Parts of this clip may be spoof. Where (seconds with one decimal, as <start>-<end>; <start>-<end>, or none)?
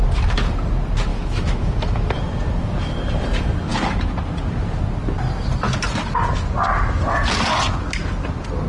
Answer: 1.1-2.2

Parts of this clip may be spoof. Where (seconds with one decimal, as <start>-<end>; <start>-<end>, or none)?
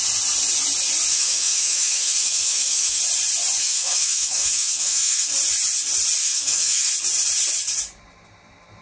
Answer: 1.1-3.0; 3.6-5.3; 6.2-6.9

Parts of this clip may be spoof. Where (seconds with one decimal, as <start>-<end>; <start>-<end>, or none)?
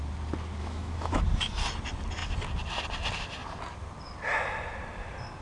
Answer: 0.6-1.2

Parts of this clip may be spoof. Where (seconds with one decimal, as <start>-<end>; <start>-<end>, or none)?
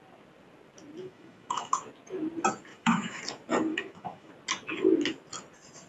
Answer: 1.0-1.8; 2.7-3.2; 3.7-4.3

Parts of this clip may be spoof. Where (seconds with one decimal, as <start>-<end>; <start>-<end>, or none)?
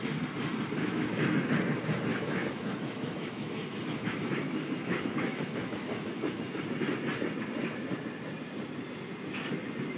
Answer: 0.8-1.5; 2.1-6.5